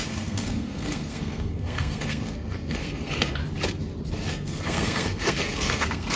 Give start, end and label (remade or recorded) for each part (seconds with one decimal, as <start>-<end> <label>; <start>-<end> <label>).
0.0-3.4 remade; 3.4-4.3 recorded; 4.3-6.2 remade